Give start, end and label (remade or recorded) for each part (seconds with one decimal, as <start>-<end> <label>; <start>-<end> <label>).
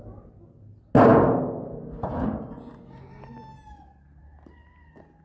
0.0-5.2 recorded